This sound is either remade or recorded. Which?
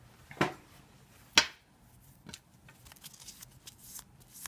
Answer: recorded